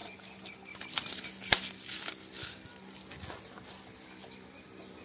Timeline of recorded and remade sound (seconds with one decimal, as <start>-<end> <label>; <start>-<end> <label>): 0.0-5.0 recorded